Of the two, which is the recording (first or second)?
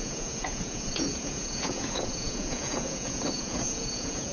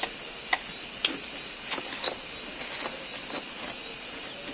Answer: second